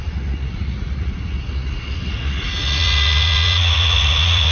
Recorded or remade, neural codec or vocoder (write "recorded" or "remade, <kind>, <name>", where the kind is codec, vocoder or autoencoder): remade, vocoder, Vocos